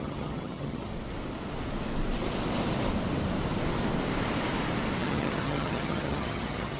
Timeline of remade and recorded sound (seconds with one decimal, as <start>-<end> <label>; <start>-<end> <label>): 0.0-0.9 remade; 0.9-5.0 recorded; 5.0-6.8 remade